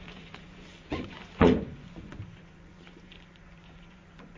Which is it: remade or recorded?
remade